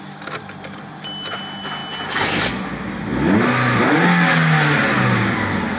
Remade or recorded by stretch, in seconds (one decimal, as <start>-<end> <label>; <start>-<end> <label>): 0.0-5.8 recorded